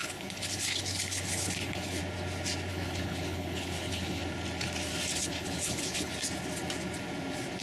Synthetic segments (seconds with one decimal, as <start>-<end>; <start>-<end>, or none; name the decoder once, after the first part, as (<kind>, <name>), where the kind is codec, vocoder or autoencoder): 0.0-2.0 (codec, HILCodec); 2.7-4.2; 5.2-6.1